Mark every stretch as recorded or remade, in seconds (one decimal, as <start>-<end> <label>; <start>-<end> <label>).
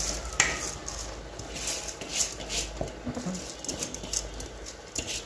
0.0-5.3 recorded